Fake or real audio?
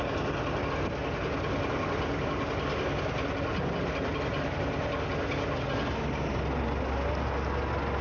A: real